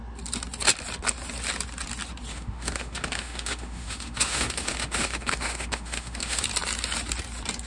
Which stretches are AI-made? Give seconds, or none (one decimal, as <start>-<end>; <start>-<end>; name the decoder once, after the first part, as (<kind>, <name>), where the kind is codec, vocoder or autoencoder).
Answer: 2.3-6.4 (autoencoder, DAC-VAE)